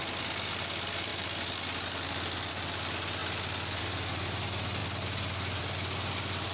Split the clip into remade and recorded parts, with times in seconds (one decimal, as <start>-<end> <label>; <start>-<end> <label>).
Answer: 0.0-6.5 recorded